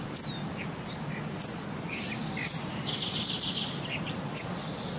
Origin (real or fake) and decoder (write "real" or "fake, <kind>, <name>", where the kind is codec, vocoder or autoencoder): real